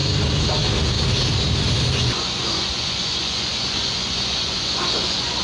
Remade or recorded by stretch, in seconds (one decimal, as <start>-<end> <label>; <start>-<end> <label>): 0.0-1.9 recorded; 1.9-5.4 remade

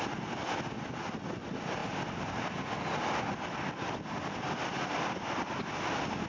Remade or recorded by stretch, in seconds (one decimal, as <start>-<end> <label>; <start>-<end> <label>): 0.0-6.3 recorded

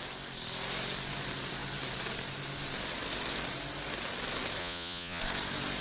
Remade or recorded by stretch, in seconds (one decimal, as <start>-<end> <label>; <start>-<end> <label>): 0.0-4.6 recorded; 4.6-5.2 remade; 5.2-5.8 recorded